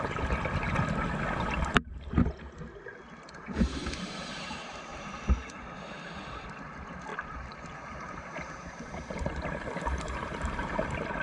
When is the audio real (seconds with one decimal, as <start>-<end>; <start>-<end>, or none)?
0.0-3.8; 5.2-7.1; 9.3-11.2